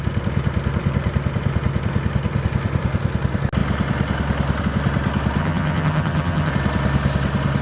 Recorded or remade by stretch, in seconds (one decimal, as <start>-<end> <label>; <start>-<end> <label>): 0.0-5.4 recorded; 5.4-6.5 remade; 6.5-7.6 recorded